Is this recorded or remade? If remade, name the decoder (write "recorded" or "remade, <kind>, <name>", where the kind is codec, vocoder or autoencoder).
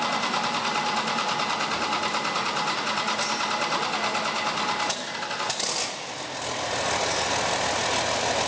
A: recorded